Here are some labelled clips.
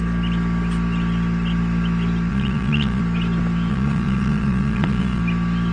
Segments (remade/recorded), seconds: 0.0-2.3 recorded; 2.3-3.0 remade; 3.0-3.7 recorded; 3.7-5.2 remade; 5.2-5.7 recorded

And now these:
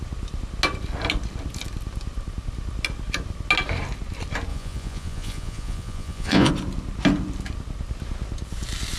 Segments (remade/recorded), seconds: 0.0-4.5 recorded; 4.5-6.5 remade; 6.5-9.0 recorded

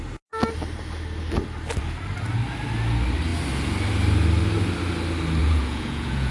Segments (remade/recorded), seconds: 0.0-5.4 recorded; 5.4-6.3 remade